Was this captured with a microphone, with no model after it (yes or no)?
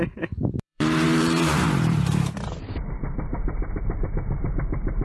no